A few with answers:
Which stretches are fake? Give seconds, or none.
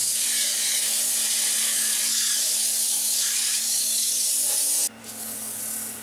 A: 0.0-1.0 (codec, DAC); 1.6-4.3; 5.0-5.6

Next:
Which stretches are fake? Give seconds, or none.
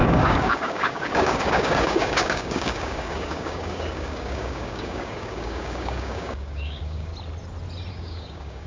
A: 0.0-7.1 (codec, DAC); 7.9-8.7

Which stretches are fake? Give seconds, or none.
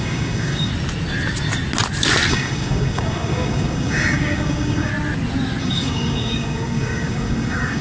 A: 0.0-0.7 (codec, DAC); 2.3-4.9; 5.6-7.8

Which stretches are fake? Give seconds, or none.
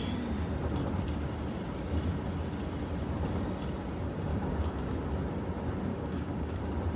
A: 4.3-5.1 (codec, DAC); 5.9-6.6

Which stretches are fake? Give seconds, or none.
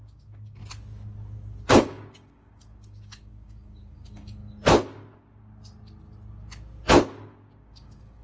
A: 0.0-0.6 (codec, DAC); 1.7-4.4; 7.6-8.2